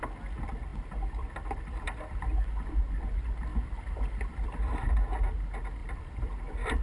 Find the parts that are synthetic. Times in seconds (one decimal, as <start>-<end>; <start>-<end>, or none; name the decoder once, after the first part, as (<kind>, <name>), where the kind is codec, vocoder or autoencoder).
0.7-2.8 (vocoder, BigVGAN v2); 3.5-4.9; 5.8-6.8